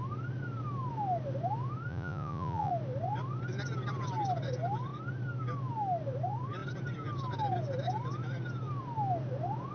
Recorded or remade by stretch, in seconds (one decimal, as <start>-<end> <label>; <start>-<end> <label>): 0.0-1.9 recorded; 1.9-2.7 remade; 2.7-9.7 recorded